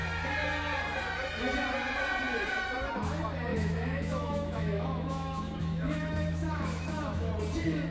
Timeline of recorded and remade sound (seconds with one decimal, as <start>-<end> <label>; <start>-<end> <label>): 0.0-3.5 recorded; 3.5-7.3 remade; 7.3-7.9 recorded